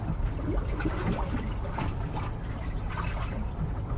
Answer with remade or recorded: recorded